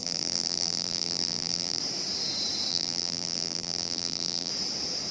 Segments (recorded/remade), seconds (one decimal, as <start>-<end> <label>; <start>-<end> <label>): 0.0-1.8 remade; 1.8-2.7 recorded; 2.7-4.5 remade; 4.5-5.1 recorded